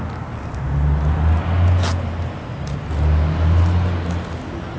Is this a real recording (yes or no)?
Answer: yes